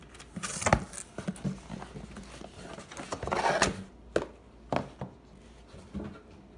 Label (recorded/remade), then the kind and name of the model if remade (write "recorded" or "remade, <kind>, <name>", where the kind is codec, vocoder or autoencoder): recorded